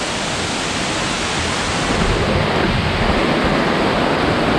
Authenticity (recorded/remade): recorded